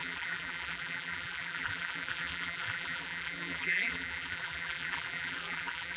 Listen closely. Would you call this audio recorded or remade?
remade